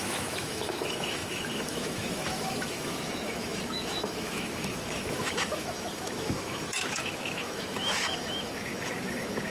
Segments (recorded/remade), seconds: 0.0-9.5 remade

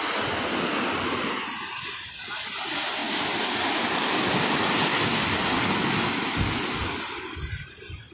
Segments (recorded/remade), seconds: 0.0-8.1 recorded

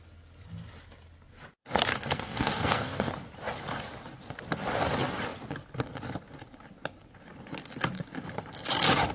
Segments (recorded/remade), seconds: 0.0-1.9 recorded; 1.9-3.1 remade; 3.1-9.1 recorded

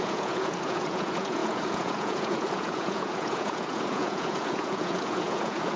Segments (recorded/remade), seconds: 0.0-5.8 remade

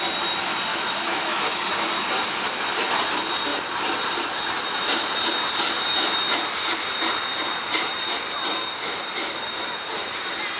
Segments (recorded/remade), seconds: 0.0-0.7 recorded; 0.7-1.6 remade; 1.6-10.6 recorded

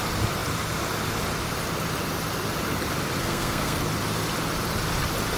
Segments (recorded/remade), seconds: 0.0-3.2 recorded; 3.2-3.8 remade; 3.8-5.4 recorded

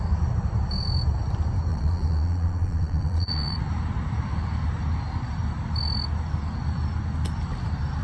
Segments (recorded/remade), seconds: 0.0-1.7 recorded; 1.7-3.6 remade; 3.6-8.0 recorded